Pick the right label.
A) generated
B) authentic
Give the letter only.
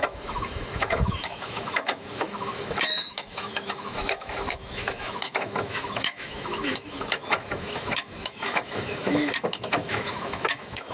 A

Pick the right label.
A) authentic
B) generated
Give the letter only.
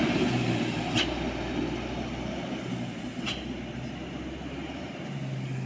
A